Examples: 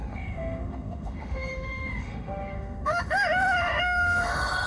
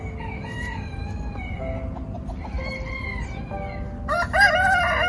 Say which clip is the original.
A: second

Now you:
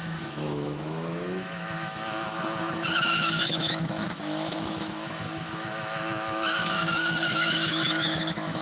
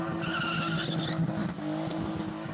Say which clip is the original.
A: second